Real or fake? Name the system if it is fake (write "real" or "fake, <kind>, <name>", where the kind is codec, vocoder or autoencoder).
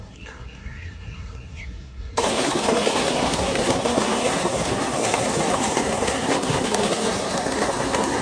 fake, codec, SNAC